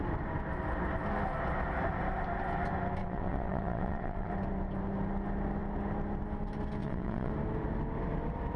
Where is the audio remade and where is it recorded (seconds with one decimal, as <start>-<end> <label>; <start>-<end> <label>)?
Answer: 0.0-3.0 recorded; 3.0-4.3 remade; 4.3-6.8 recorded; 6.8-7.3 remade; 7.3-8.6 recorded